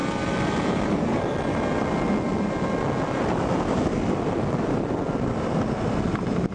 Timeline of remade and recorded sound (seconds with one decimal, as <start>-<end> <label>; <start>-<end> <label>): 0.0-1.2 remade; 1.2-6.5 recorded

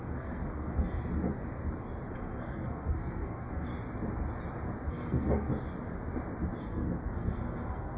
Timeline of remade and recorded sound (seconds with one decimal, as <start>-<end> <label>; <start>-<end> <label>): 0.0-1.0 remade; 1.0-2.1 recorded; 2.1-3.7 remade; 3.7-4.9 recorded; 4.9-5.5 remade; 5.5-6.6 recorded; 6.6-8.0 remade

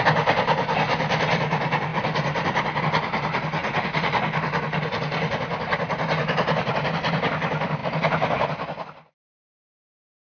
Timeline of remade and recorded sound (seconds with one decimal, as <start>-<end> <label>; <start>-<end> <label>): 0.0-10.4 recorded

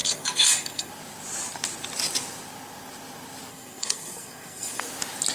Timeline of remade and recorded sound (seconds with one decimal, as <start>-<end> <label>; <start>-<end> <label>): 0.0-0.9 remade; 0.9-3.5 recorded; 3.5-4.8 remade; 4.8-5.3 recorded